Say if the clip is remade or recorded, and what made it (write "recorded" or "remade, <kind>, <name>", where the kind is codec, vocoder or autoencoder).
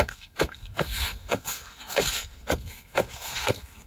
remade, codec, SNAC